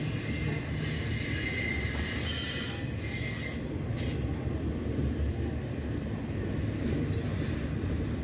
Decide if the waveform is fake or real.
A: real